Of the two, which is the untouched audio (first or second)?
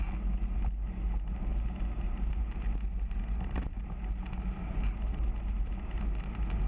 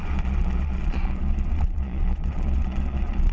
first